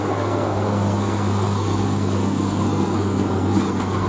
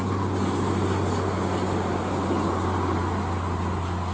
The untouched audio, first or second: second